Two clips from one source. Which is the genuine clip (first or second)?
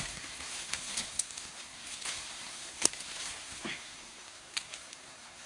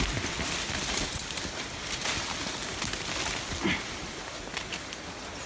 second